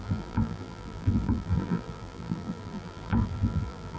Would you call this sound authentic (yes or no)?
no